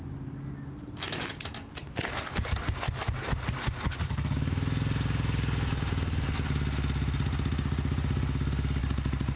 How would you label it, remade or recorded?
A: recorded